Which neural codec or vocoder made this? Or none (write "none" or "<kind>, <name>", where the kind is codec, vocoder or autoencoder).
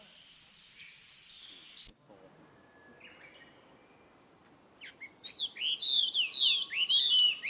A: none